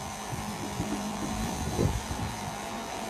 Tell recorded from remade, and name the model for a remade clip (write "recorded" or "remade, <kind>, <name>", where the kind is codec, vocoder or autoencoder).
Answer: remade, vocoder, BigVGAN v2